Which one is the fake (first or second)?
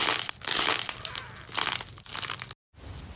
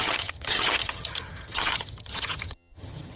second